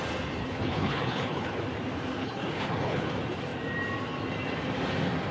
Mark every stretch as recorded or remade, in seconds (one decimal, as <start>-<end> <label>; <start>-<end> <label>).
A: 0.0-0.4 recorded; 0.4-1.6 remade; 1.6-2.2 recorded; 2.2-3.1 remade; 3.1-5.3 recorded